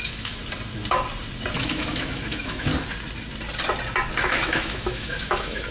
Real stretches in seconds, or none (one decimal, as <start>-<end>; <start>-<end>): 0.4-1.6; 2.7-4.2